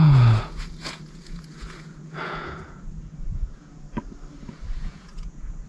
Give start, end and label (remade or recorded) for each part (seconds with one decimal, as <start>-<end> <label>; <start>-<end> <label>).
0.0-3.9 remade; 3.9-4.8 recorded; 4.8-5.7 remade

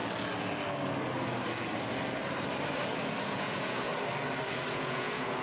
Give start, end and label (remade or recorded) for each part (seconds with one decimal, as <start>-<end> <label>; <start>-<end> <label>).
0.0-3.2 recorded; 3.2-3.9 remade; 3.9-4.7 recorded; 4.7-5.4 remade

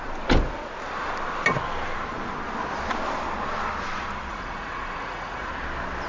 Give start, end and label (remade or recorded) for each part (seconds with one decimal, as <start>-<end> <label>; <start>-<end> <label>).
0.0-4.3 recorded; 4.3-5.5 remade; 5.5-6.1 recorded

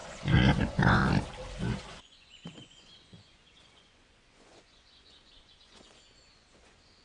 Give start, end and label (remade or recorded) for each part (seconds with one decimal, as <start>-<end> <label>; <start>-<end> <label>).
0.0-1.0 remade; 1.0-1.6 recorded; 1.6-7.0 remade

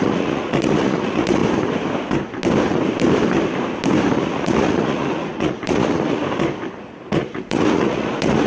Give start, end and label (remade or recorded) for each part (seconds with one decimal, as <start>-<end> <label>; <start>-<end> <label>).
0.0-1.4 remade; 1.4-4.1 recorded; 4.1-6.2 remade; 6.2-6.8 recorded; 6.8-8.5 remade